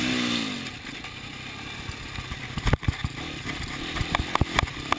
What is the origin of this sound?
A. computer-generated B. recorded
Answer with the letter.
B